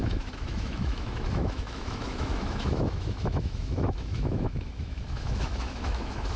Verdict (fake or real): fake